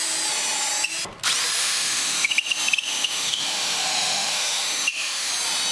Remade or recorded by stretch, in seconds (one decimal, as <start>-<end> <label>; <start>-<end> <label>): 0.0-1.6 recorded; 1.6-2.3 remade; 2.3-2.9 recorded; 2.9-5.3 remade; 5.3-5.7 recorded